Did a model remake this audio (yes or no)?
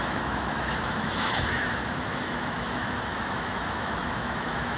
yes